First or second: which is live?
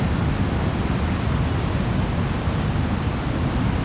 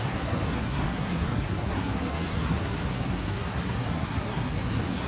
first